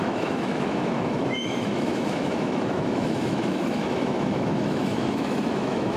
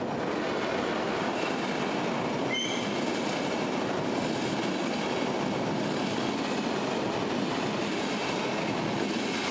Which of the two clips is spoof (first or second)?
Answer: first